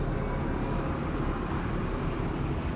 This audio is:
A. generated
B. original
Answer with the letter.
B